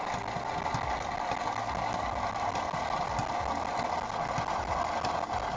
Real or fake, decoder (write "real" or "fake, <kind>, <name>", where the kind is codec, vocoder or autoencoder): real